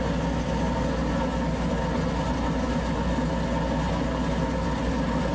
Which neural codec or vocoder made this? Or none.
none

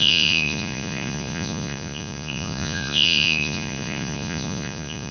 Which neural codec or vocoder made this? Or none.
vocoder, Vocos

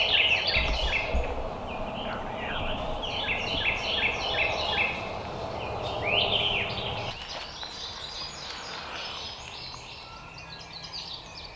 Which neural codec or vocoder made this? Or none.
none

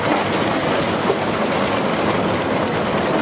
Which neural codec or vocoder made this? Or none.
none